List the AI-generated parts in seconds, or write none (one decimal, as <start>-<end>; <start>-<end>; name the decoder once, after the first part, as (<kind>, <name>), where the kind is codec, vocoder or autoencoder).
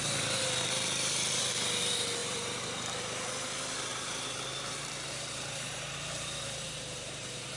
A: 2.2-3.3 (vocoder, BigVGAN v2); 3.9-7.6